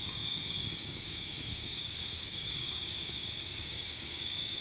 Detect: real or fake fake